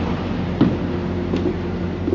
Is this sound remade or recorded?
recorded